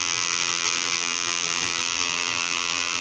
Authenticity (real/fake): fake